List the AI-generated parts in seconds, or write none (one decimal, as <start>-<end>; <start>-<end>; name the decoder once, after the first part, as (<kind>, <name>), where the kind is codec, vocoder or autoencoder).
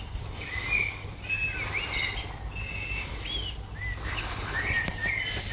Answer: none